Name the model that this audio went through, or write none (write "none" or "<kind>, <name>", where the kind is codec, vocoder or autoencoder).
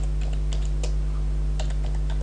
none